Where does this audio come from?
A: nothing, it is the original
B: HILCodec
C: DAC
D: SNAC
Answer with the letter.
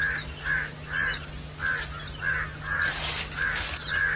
A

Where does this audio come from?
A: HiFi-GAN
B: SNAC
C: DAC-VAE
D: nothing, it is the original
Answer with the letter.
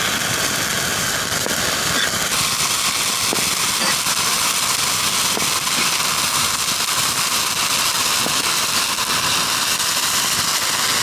D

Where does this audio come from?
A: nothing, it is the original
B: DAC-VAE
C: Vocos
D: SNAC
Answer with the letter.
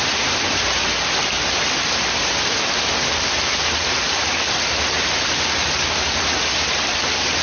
A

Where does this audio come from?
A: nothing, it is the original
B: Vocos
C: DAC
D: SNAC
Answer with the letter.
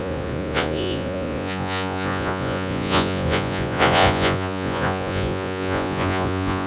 B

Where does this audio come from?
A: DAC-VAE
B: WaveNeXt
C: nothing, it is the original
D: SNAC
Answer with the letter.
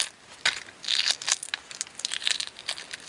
C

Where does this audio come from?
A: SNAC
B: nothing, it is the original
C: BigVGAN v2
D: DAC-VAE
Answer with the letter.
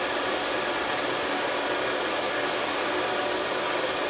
B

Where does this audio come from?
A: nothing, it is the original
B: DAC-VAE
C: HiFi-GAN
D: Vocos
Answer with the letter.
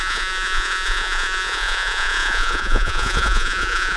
D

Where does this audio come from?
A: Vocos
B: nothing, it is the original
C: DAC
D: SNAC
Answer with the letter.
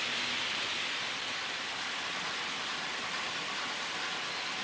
B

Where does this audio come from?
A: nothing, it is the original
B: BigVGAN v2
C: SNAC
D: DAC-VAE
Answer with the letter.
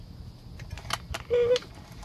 A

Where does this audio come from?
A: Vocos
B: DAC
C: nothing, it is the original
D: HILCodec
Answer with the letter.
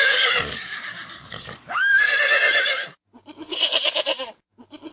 B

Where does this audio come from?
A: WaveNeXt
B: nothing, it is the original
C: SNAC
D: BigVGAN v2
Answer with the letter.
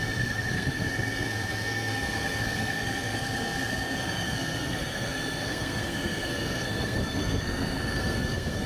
C